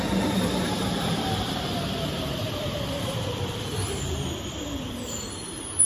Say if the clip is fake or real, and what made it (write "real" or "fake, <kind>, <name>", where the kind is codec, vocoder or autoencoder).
fake, vocoder, BigVGAN v2